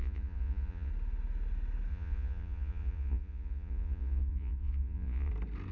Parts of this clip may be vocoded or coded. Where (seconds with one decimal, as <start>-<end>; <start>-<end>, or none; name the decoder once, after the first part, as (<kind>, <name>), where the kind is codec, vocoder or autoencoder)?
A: 0.0-0.9 (vocoder, Vocos); 1.9-5.3